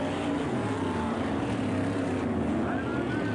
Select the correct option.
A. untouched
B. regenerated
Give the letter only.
A